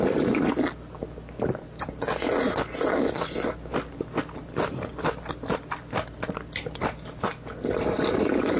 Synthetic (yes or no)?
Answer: no